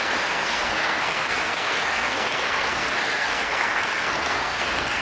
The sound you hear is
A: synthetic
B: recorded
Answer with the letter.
A